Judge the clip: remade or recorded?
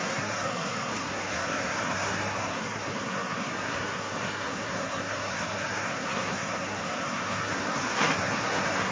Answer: remade